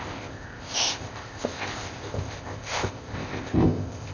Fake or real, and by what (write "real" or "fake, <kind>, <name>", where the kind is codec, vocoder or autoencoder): fake, codec, ZipCodec